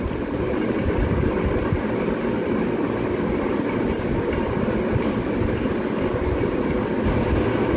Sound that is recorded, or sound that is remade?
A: recorded